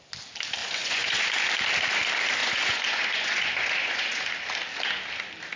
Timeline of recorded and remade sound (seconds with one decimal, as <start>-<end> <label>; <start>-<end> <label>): 0.0-0.6 recorded; 0.6-1.2 remade; 1.2-2.4 recorded; 2.4-4.2 remade; 4.2-5.6 recorded